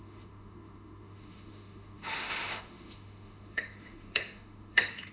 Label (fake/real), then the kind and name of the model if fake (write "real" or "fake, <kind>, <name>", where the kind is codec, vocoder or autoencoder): fake, autoencoder, DAC-VAE